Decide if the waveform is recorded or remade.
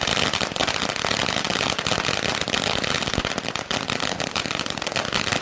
recorded